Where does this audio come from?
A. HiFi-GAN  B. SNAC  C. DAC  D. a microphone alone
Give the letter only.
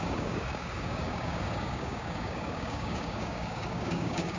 C